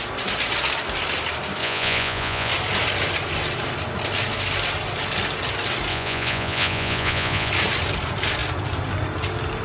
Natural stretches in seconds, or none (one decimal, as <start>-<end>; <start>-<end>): 0.0-1.6; 2.5-5.9; 7.5-9.6